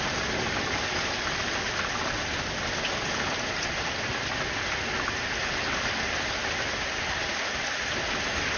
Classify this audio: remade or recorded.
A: recorded